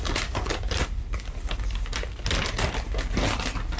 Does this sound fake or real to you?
real